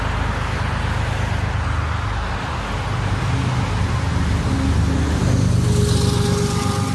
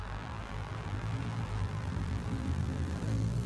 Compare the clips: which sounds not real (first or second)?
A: second